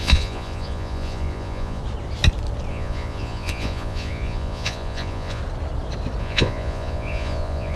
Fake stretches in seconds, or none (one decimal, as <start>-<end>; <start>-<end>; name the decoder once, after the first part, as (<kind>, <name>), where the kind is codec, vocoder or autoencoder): 0.0-1.8 (vocoder, Vocos); 2.7-5.4; 6.2-7.8